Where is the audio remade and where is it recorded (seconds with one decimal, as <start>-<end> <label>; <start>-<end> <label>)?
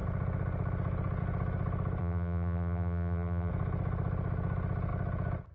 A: 0.0-2.0 recorded; 2.0-3.5 remade; 3.5-5.5 recorded